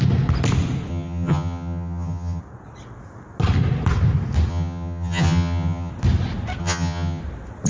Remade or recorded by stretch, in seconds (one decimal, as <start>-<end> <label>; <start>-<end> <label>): 0.0-0.9 recorded; 0.9-2.4 remade; 2.4-4.5 recorded; 4.5-5.9 remade; 5.9-6.6 recorded; 6.6-7.2 remade; 7.2-7.7 recorded